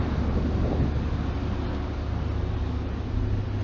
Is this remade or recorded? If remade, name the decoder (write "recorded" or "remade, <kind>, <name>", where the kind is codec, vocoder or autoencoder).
recorded